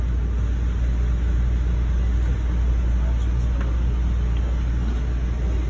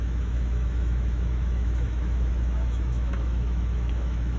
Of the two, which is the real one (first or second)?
first